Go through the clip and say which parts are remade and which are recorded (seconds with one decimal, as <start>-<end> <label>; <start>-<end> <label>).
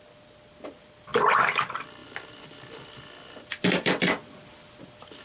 0.0-5.2 recorded